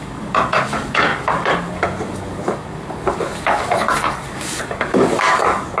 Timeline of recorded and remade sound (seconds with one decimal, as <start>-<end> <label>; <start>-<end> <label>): 0.0-5.8 remade